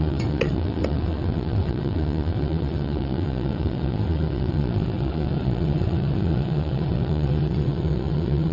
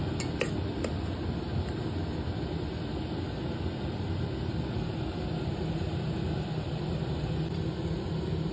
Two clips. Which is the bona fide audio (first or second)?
second